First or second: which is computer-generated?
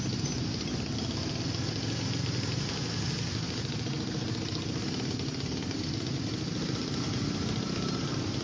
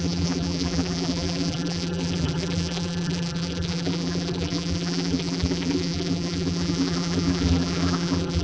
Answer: second